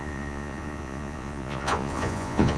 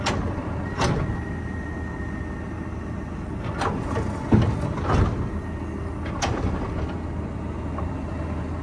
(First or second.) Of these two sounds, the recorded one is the second